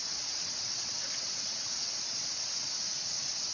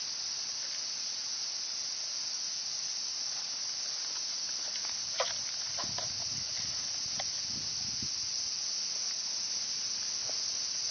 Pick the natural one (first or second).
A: second